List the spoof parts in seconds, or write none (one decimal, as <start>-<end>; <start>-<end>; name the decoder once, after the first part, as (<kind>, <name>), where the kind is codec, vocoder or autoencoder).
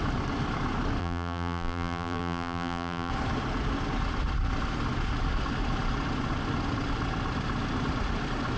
1.0-3.1 (vocoder, BigVGAN v2)